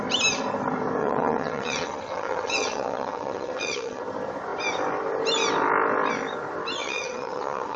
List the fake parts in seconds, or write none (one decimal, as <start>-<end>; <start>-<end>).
1.0-4.0; 6.8-7.8